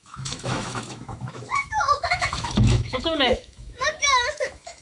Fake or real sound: fake